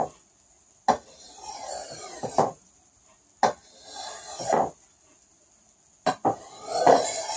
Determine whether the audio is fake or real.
fake